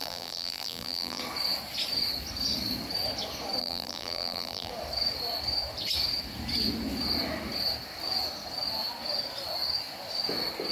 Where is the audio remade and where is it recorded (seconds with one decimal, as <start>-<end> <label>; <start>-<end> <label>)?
0.0-1.2 remade; 1.2-3.6 recorded; 3.6-4.7 remade; 4.7-10.7 recorded